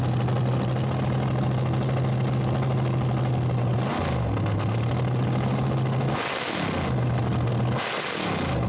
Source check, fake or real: real